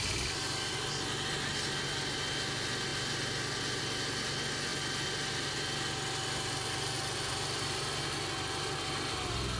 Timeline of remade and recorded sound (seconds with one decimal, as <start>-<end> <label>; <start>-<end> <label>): 0.0-9.6 recorded